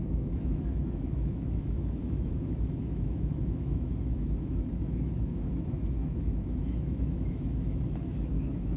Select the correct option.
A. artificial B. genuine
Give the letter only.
A